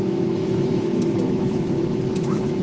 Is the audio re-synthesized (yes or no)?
yes